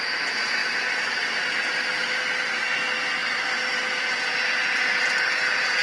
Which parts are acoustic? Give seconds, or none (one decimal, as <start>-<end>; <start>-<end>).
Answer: 0.6-3.9